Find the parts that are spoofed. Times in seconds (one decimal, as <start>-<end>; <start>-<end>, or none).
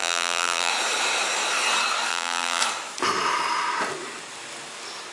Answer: 0.0-0.7; 2.1-2.6